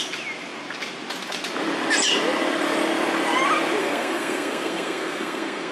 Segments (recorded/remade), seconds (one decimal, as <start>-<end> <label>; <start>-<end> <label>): 0.0-3.8 recorded; 3.8-5.7 remade